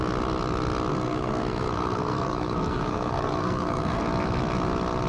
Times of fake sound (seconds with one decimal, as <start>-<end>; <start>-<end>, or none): 0.9-4.0